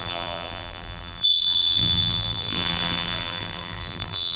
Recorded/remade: remade